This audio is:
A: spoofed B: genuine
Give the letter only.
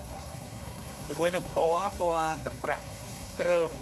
A